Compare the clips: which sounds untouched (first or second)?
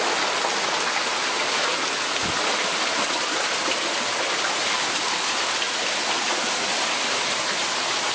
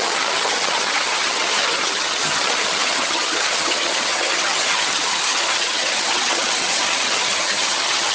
first